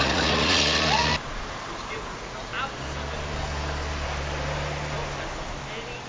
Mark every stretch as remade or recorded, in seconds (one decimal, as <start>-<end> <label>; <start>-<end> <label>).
0.0-1.1 remade; 1.1-2.1 recorded; 2.1-2.5 remade; 2.5-6.1 recorded